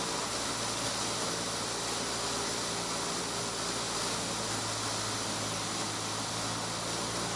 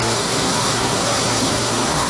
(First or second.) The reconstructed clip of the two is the second